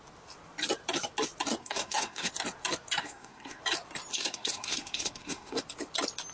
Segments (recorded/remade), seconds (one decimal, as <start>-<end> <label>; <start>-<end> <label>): 0.0-1.6 recorded; 1.6-2.3 remade; 2.3-3.0 recorded; 3.0-3.6 remade; 3.6-4.1 recorded; 4.1-5.6 remade; 5.6-6.3 recorded